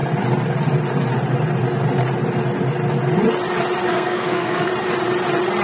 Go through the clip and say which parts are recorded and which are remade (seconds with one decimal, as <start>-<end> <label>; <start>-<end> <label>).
0.0-3.9 recorded; 3.9-4.7 remade; 4.7-5.6 recorded